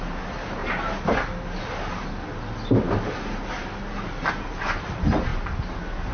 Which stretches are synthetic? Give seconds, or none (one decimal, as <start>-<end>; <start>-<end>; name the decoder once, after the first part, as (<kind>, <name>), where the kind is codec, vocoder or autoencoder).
0.0-0.6 (vocoder, BigVGAN v2); 4.3-5.3